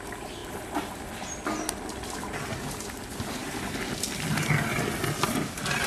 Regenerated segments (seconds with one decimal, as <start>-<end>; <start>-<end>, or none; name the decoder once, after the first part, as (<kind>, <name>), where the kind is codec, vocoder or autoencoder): none